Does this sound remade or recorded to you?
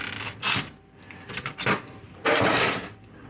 recorded